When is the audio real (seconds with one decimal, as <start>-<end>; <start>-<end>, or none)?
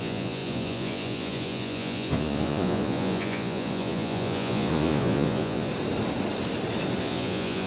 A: 5.7-7.0